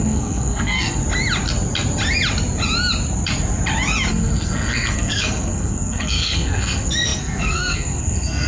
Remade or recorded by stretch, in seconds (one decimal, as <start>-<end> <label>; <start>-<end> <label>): 0.0-1.0 remade; 1.0-4.1 recorded; 4.1-8.5 remade